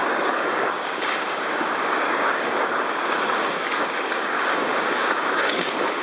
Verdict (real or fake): fake